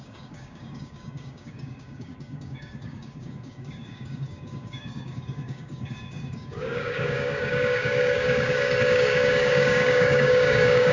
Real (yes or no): no